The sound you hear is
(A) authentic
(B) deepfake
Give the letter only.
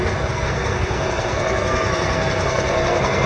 B